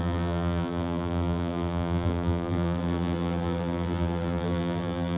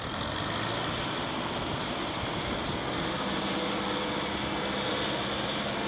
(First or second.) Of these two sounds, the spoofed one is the first